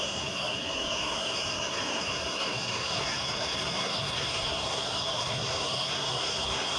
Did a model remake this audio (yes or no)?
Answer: yes